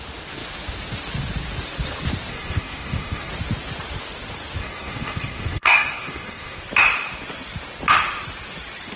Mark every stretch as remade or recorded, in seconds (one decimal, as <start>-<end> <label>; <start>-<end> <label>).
0.0-2.3 recorded; 2.3-3.3 remade; 3.3-4.6 recorded; 4.6-6.6 remade; 6.6-9.0 recorded